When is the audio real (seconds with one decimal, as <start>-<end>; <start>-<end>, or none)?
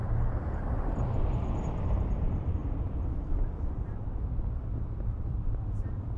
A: 2.6-3.3